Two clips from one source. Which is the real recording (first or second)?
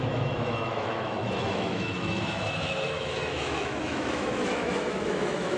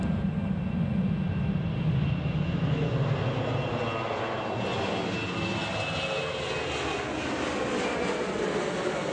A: second